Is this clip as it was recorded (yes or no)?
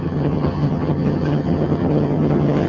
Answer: no